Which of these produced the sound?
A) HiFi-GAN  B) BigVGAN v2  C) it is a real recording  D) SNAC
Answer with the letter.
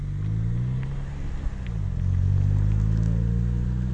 C